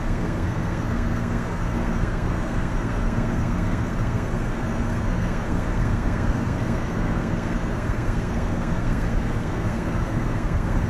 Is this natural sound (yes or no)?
no